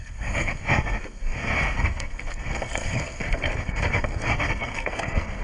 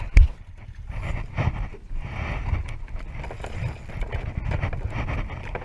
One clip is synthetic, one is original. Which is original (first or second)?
second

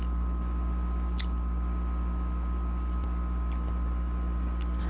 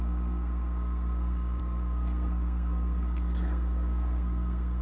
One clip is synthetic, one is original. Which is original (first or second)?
first